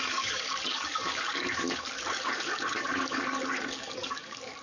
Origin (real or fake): fake